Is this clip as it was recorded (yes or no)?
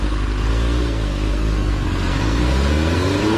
no